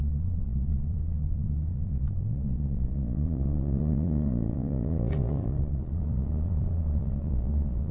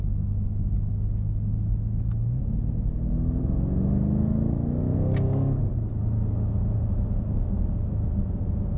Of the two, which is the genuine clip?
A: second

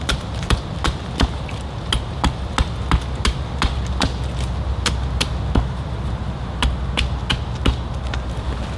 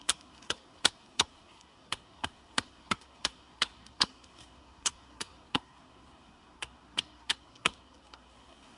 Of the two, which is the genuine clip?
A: first